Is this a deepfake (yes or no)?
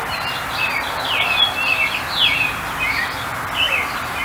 no